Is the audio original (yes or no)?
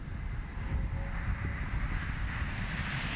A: yes